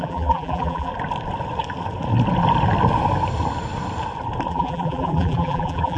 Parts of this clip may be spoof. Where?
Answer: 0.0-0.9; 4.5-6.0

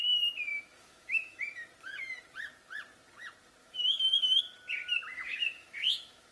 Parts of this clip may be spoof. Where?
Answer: 0.5-1.4; 3.6-4.4; 5.1-6.3

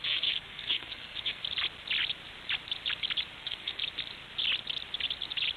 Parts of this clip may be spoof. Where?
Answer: 0.0-1.4; 3.4-3.8